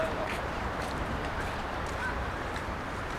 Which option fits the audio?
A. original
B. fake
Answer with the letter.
B